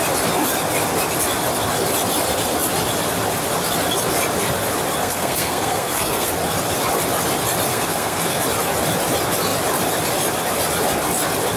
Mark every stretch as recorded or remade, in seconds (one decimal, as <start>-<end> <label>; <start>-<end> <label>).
0.0-5.0 recorded; 5.0-6.3 remade; 6.3-7.7 recorded; 7.7-8.4 remade; 8.4-11.6 recorded